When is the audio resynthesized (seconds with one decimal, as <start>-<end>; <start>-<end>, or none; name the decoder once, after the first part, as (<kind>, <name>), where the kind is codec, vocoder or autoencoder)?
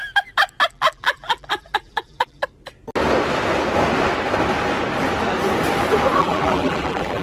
0.7-2.4 (vocoder, BigVGAN v2); 6.2-7.2